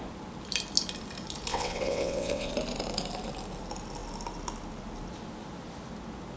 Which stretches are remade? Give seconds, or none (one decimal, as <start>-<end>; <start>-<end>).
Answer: 1.5-2.5